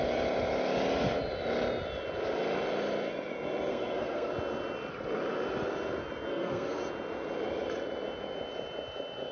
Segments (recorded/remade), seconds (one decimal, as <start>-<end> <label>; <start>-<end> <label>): 0.0-3.7 recorded; 3.7-4.3 remade; 4.3-6.3 recorded; 6.3-6.8 remade; 6.8-9.3 recorded